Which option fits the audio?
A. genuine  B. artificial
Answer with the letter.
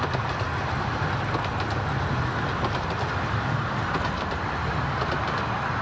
A